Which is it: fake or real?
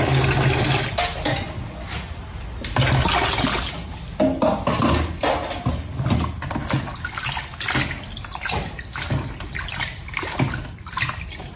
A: real